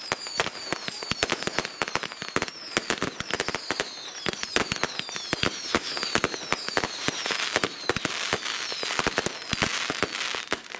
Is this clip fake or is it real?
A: real